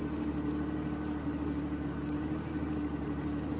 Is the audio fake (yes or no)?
no